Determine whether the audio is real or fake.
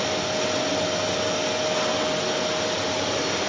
real